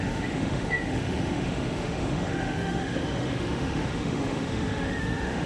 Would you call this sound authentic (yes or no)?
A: no